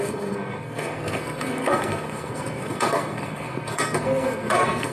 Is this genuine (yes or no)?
no